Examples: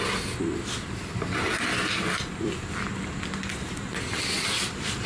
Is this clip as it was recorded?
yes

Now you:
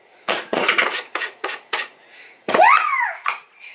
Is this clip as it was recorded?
no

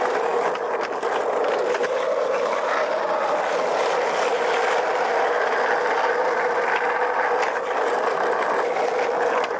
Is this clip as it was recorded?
yes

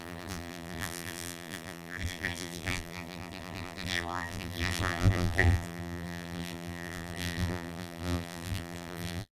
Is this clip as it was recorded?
no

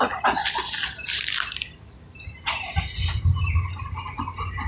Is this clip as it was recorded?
yes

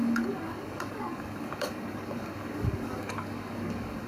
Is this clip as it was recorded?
no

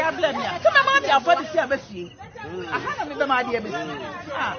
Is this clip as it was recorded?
yes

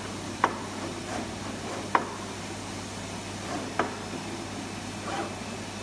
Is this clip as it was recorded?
yes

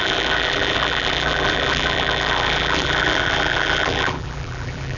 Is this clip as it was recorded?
no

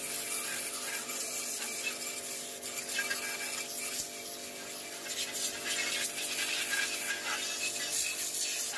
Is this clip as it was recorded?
yes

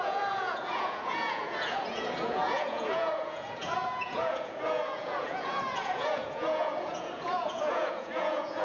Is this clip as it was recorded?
no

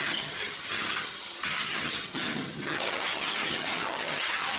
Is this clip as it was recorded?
no